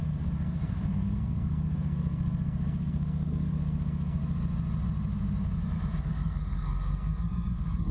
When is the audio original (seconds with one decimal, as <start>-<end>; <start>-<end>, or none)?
4.2-6.0